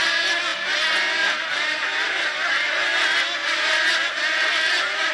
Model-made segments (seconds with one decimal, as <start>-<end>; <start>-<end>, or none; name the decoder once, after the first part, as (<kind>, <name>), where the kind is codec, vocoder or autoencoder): none